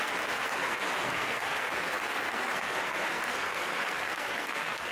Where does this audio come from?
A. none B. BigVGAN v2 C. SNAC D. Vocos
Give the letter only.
C